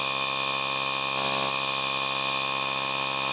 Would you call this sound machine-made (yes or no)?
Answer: no